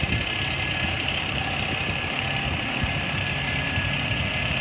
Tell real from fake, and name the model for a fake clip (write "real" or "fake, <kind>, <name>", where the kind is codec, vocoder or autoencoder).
real